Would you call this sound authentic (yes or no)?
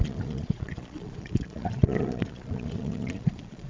no